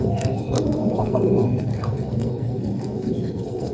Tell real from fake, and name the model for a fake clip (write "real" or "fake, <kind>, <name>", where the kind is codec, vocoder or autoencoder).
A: fake, codec, SNAC